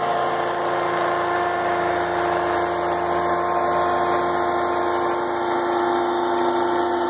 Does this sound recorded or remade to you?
recorded